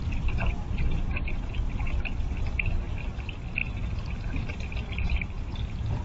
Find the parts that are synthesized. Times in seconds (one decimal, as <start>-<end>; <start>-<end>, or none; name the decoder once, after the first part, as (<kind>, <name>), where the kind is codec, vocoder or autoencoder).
none